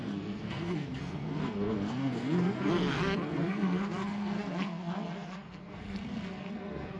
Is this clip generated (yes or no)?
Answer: yes